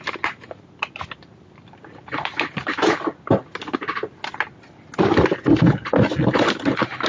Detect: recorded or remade recorded